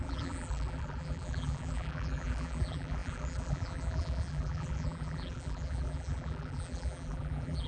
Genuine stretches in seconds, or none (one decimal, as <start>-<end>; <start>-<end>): none